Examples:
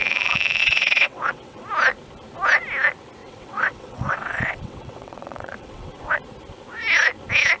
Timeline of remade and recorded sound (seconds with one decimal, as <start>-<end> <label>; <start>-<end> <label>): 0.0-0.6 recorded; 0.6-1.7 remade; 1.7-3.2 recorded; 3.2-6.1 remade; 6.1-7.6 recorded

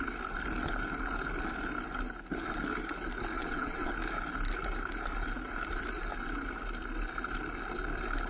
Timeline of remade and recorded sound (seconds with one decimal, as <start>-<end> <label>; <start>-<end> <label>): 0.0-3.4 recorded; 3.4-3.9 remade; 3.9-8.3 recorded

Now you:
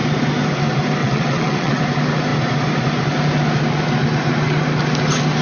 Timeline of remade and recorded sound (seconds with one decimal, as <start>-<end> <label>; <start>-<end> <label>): 0.0-1.0 recorded; 1.0-1.8 remade; 1.8-5.4 recorded

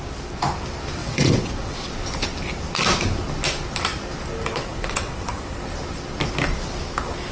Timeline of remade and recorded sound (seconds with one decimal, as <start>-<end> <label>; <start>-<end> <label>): 0.0-1.0 recorded; 1.0-1.9 remade; 1.9-4.5 recorded; 4.5-5.6 remade; 5.6-7.3 recorded

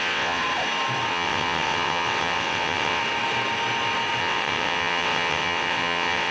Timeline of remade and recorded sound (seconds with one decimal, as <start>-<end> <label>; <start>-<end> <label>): 0.0-0.4 remade; 0.4-1.1 recorded; 1.1-3.0 remade; 3.0-4.2 recorded; 4.2-6.3 remade

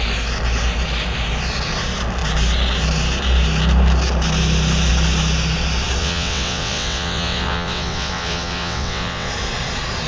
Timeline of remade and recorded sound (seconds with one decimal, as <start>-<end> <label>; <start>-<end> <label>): 0.0-6.0 recorded; 6.0-9.3 remade; 9.3-10.1 recorded